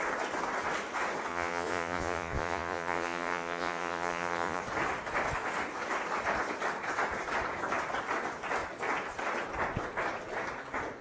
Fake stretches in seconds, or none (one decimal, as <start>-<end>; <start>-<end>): 1.3-4.6

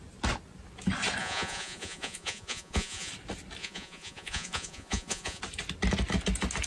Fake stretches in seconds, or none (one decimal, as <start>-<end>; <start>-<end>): 1.2-3.1; 3.6-5.4

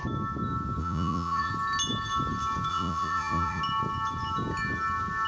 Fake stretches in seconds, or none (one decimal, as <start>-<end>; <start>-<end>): 0.8-1.5; 2.7-3.6

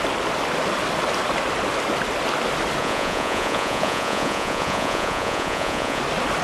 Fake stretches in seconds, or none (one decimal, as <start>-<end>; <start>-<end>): 2.8-6.0

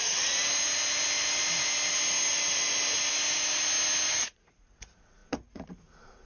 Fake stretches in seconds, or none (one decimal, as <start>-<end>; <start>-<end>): 0.0-0.4; 4.2-6.3

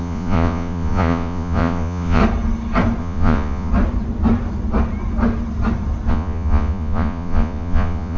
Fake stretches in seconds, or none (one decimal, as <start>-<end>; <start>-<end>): 0.0-2.2; 3.0-3.7; 6.1-8.2

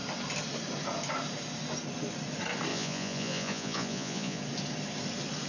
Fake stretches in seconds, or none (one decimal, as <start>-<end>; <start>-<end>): 2.7-4.4